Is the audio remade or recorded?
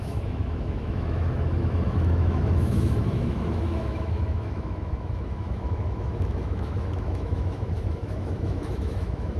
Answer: remade